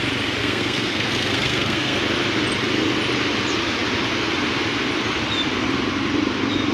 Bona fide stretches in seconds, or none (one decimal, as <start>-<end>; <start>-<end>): 0.0-0.4; 2.0-6.7